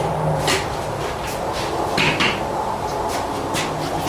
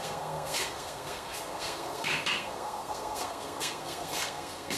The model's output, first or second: second